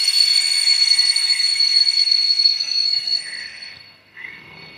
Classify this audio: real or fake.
fake